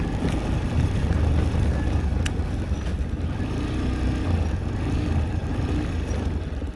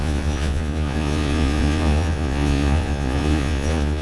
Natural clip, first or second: first